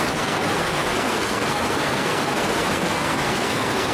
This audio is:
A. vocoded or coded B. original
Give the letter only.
A